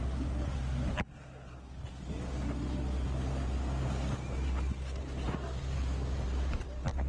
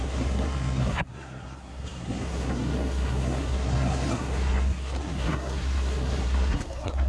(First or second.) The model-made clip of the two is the second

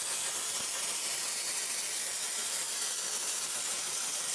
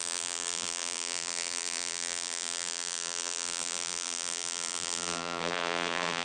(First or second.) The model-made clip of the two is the second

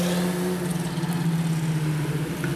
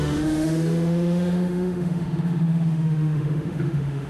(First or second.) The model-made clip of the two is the second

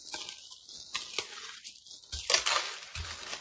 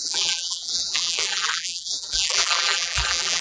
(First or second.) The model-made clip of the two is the second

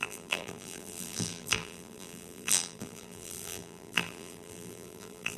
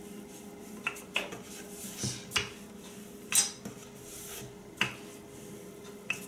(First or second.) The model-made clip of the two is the first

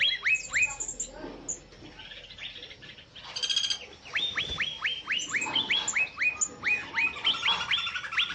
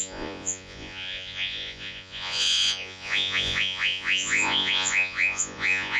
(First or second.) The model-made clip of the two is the second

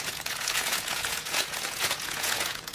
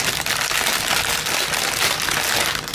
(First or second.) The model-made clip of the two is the first